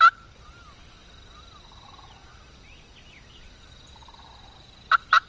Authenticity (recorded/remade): recorded